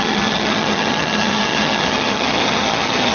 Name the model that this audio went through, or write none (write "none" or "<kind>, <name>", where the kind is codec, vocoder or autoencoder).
vocoder, HiFi-GAN